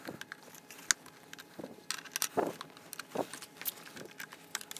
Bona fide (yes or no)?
yes